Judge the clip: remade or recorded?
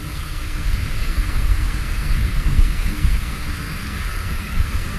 remade